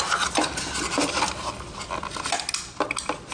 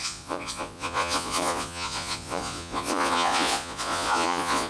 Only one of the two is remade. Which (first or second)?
second